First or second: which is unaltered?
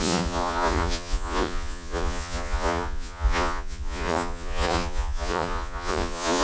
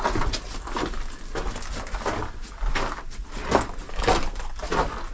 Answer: second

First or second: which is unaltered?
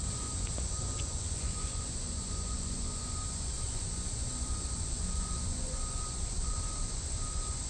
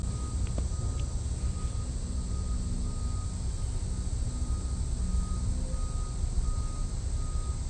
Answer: second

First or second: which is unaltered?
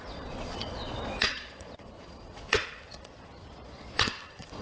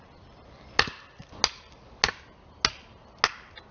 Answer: second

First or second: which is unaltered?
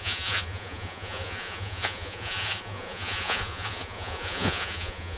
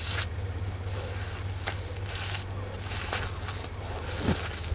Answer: second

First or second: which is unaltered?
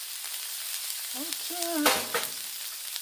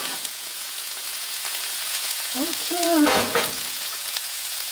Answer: first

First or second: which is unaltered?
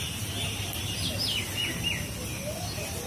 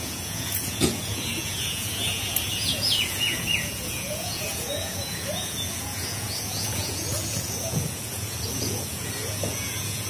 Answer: first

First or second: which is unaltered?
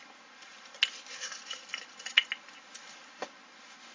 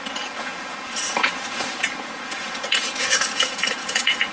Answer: first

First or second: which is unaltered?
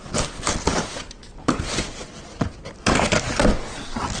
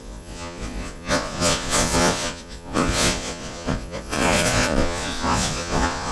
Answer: first